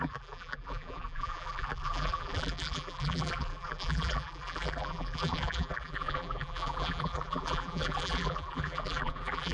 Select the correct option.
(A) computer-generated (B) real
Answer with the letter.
A